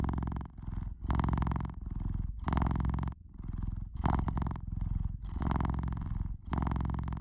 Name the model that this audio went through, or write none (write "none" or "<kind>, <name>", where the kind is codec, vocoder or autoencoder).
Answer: none